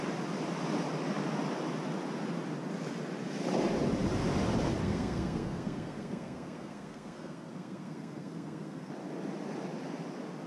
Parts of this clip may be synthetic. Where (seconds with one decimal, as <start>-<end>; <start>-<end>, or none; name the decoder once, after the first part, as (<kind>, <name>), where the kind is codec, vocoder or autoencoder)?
4.8-8.9 (codec, SNAC)